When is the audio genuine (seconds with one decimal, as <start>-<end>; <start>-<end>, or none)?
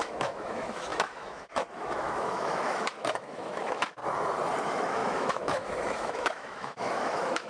4.0-4.6